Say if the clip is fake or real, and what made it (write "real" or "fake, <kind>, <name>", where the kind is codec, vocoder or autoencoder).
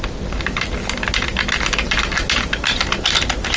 real